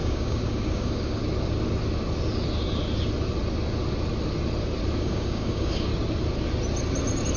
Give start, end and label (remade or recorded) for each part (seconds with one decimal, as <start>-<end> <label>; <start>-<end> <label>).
0.0-1.2 remade; 1.2-5.0 recorded; 5.0-5.9 remade; 5.9-7.4 recorded